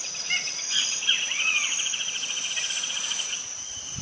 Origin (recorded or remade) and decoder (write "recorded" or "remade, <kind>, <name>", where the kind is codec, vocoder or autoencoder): remade, vocoder, Vocos